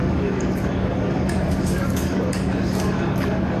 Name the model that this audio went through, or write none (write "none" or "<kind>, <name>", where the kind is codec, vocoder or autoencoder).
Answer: codec, DAC